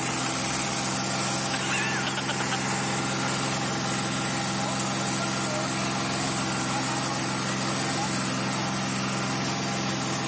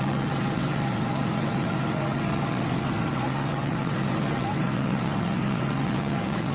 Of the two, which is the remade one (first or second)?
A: second